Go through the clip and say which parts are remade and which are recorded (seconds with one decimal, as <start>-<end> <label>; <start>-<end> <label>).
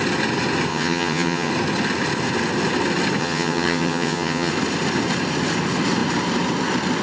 0.0-0.7 recorded; 0.7-1.5 remade; 1.5-3.2 recorded; 3.2-4.5 remade; 4.5-7.0 recorded